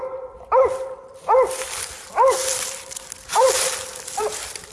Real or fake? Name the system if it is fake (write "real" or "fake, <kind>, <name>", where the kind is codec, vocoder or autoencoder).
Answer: real